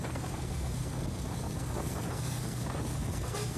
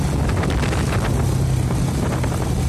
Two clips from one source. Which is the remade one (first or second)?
first